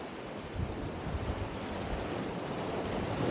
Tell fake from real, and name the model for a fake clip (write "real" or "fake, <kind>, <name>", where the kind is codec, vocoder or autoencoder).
fake, vocoder, BigVGAN v2